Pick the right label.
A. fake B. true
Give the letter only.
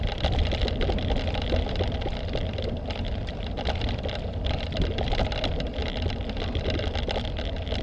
B